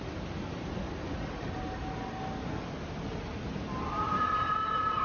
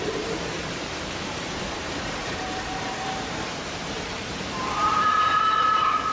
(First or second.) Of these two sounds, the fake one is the second